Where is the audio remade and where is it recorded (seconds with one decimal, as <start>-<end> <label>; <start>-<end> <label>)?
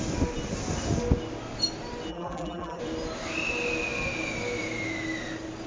0.0-2.1 recorded; 2.1-2.8 remade; 2.8-5.7 recorded